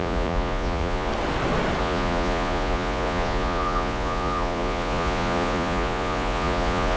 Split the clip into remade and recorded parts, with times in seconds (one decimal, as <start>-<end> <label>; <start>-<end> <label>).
0.0-1.1 remade; 1.1-1.8 recorded; 1.8-7.0 remade